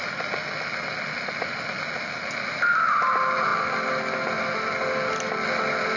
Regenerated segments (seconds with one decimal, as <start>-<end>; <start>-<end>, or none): none